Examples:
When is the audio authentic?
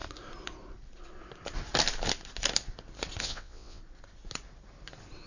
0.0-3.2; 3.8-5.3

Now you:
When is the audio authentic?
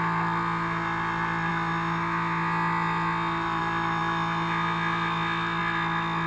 0.0-6.3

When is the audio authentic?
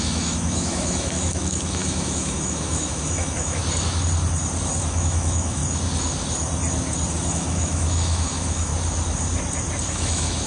3.6-4.9; 5.6-7.3; 8.7-9.9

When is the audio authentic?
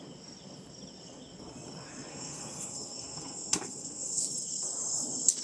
0.0-2.1; 4.2-5.4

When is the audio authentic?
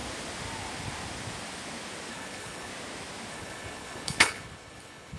0.0-2.1; 2.7-3.3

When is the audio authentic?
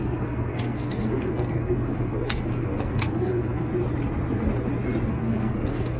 3.7-5.1